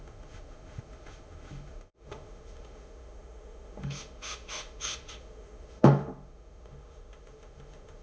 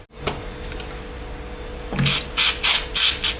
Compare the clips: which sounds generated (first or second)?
first